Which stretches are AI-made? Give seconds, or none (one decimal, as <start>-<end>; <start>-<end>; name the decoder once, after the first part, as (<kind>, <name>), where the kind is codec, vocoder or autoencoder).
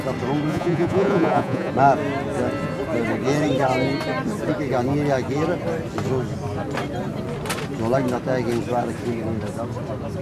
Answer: 0.5-1.7 (vocoder, Vocos)